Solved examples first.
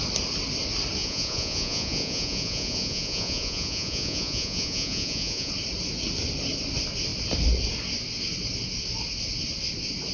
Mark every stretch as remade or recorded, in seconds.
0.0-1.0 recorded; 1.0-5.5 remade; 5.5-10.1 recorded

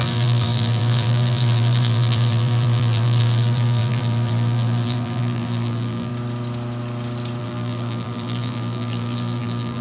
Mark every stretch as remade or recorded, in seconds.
0.0-6.1 remade; 6.1-7.4 recorded; 7.4-9.8 remade

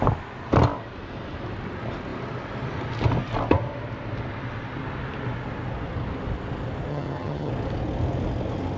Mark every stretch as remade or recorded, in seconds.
0.0-6.9 recorded; 6.9-7.5 remade; 7.5-8.8 recorded

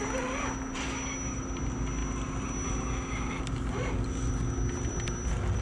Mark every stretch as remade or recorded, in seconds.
0.0-5.6 recorded

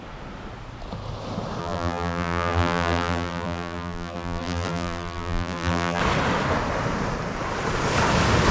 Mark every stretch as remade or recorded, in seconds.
0.0-1.6 recorded; 1.6-6.0 remade; 6.0-8.5 recorded

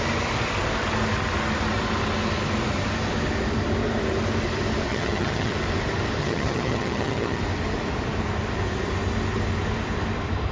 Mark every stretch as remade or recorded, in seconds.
0.0-4.9 recorded; 4.9-5.5 remade; 5.5-6.2 recorded; 6.2-7.4 remade; 7.4-10.5 recorded

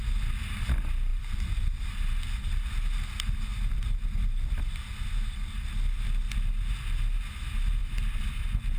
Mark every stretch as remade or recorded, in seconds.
0.0-1.1 recorded; 1.1-2.2 remade; 2.2-3.5 recorded; 3.5-4.7 remade; 4.7-7.8 recorded; 7.8-8.8 remade